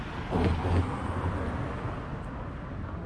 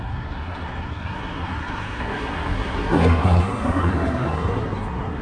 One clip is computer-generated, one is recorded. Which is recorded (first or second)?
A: first